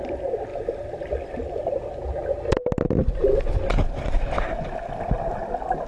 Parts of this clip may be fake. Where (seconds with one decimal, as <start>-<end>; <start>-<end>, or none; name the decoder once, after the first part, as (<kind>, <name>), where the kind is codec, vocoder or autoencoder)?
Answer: 0.5-1.6 (vocoder, BigVGAN v2); 3.0-3.6